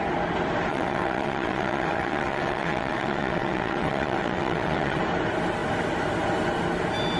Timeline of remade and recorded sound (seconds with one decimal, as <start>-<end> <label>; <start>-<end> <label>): 0.0-0.7 recorded; 0.7-5.0 remade; 5.0-7.2 recorded